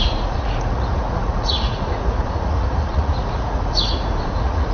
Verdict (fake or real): fake